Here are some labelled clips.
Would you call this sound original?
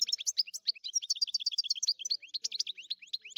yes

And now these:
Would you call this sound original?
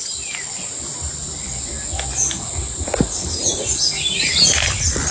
yes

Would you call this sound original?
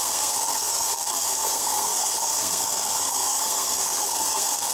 no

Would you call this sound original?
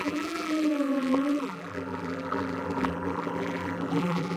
no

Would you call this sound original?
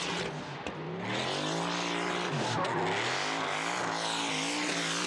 yes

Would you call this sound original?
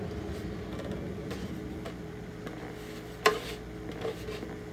yes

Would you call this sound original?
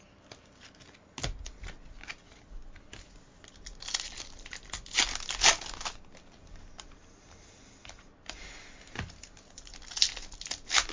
yes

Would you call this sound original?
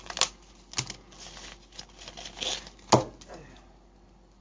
yes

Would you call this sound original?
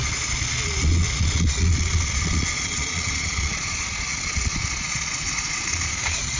no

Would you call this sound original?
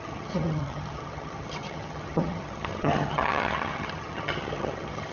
no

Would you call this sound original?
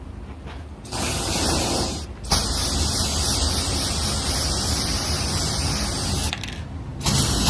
yes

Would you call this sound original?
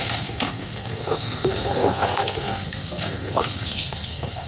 no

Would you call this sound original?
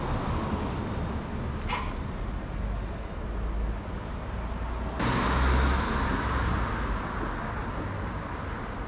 yes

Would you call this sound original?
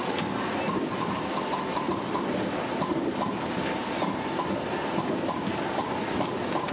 yes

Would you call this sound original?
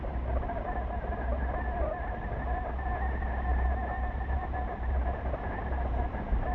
yes